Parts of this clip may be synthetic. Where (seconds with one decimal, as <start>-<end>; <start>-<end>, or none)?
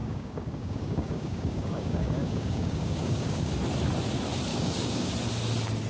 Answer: 0.0-3.5; 4.5-5.1